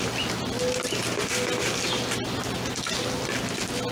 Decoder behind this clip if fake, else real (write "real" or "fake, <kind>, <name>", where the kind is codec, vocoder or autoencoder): real